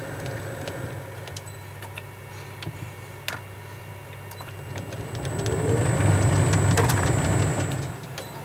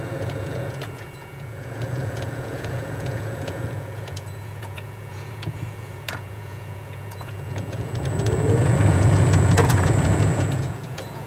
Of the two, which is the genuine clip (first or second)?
first